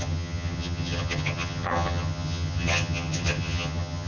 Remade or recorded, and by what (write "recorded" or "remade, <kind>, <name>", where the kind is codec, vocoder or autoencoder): remade, vocoder, HiFi-GAN